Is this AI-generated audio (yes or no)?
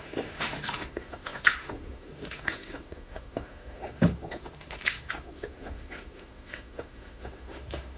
yes